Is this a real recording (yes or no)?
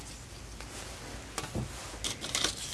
yes